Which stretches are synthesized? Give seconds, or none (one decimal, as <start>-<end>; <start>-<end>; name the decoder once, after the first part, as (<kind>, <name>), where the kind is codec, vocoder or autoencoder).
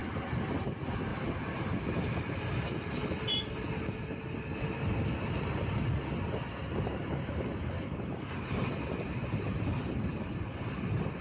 1.1-2.3 (vocoder, BigVGAN v2); 6.6-10.1